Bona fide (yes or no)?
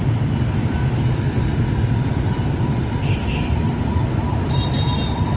yes